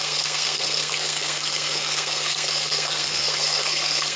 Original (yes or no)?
no